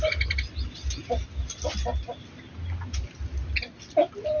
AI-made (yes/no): no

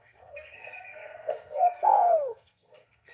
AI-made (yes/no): yes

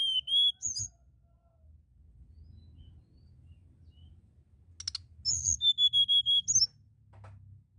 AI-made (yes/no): no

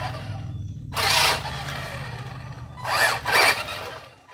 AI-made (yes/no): no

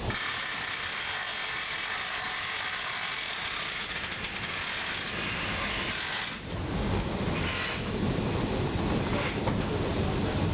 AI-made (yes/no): no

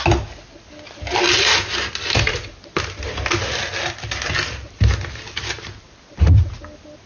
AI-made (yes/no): no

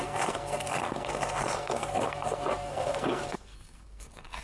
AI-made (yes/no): yes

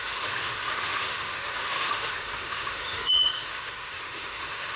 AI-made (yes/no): yes